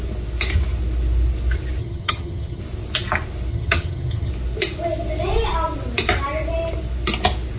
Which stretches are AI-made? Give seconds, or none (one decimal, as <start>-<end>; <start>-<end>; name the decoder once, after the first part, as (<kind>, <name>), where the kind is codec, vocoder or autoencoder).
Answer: 1.8-2.6 (vocoder, HiFi-GAN); 3.5-4.3